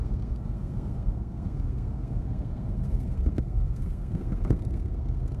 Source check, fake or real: fake